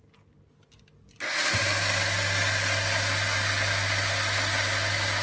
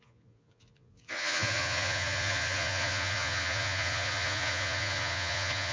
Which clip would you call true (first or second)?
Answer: first